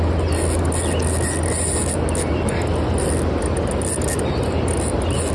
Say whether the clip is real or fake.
real